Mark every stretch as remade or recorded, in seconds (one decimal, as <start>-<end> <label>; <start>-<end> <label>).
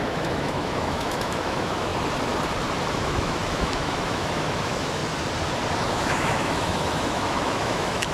0.0-1.9 remade; 1.9-2.9 recorded; 2.9-5.0 remade; 5.0-5.9 recorded; 5.9-8.1 remade